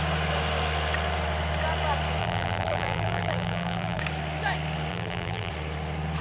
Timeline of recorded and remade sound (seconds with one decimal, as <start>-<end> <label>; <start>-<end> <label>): 0.0-2.2 recorded; 2.2-4.0 remade; 4.0-4.9 recorded; 4.9-5.5 remade; 5.5-6.2 recorded